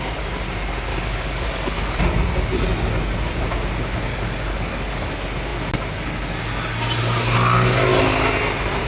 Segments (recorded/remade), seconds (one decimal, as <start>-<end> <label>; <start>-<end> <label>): 0.0-0.9 recorded; 0.9-2.0 remade; 2.0-4.1 recorded; 4.1-5.1 remade; 5.1-8.9 recorded